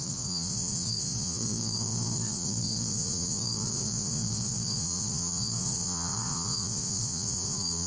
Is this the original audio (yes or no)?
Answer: no